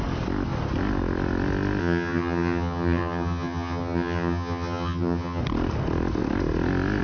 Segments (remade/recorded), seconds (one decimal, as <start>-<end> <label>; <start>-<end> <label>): 0.0-1.8 recorded; 1.8-5.4 remade; 5.4-7.0 recorded